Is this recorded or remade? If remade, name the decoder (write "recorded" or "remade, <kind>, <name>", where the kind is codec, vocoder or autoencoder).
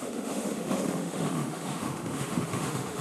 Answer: remade, autoencoder, DAC-VAE